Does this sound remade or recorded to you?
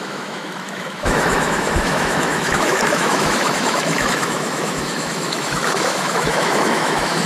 remade